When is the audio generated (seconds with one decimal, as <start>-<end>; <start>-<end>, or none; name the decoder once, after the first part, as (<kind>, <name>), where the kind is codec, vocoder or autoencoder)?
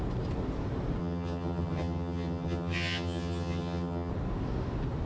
1.0-4.1 (vocoder, HiFi-GAN)